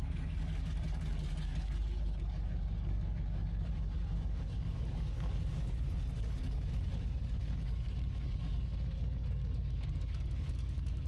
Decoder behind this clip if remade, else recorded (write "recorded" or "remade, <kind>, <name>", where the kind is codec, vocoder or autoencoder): remade, codec, DAC